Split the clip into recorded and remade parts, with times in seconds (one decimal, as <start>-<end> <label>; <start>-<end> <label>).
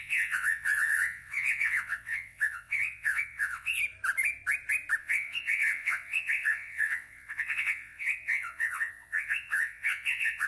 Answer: 0.0-3.8 remade; 3.8-5.0 recorded; 5.0-10.5 remade